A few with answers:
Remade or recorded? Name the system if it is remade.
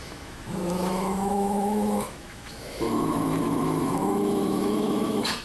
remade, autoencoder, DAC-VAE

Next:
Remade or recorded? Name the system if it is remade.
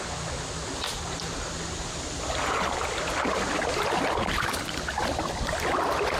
recorded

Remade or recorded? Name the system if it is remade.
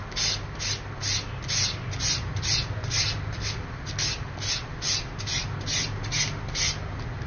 recorded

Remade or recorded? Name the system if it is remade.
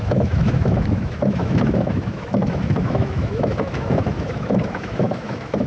remade, autoencoder, DAC-VAE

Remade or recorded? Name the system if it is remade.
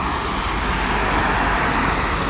recorded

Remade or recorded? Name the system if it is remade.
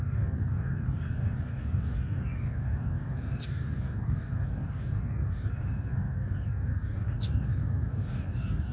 remade, codec, DAC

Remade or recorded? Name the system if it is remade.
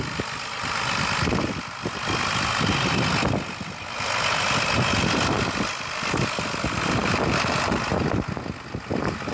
recorded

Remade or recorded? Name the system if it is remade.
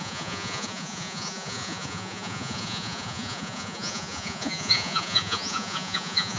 remade, vocoder, Vocos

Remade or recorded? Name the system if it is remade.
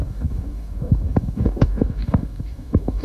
remade, codec, DAC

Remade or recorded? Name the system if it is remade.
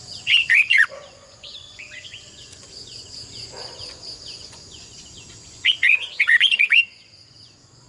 remade, vocoder, Vocos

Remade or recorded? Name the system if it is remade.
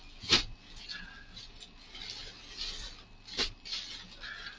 recorded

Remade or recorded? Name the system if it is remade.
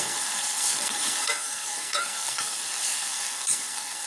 remade, codec, SNAC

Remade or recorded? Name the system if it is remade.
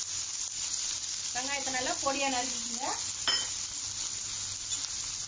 recorded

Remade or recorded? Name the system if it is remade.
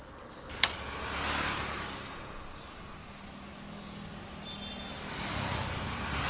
recorded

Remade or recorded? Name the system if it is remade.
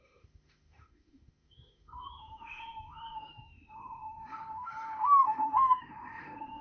remade, autoencoder, DAC-VAE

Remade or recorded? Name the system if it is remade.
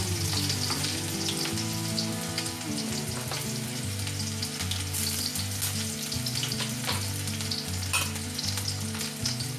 recorded